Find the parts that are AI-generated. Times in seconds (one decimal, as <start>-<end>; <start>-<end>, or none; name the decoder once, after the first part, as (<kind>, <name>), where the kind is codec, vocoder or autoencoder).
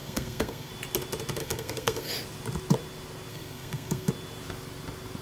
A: 0.0-0.7 (codec, SNAC); 1.4-2.1; 3.3-4.1